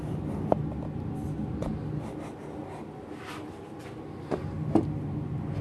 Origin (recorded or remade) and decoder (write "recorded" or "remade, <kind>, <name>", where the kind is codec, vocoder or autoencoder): recorded